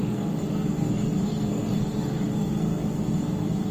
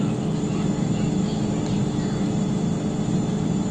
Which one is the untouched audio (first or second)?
second